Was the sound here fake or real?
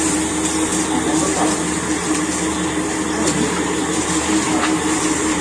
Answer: real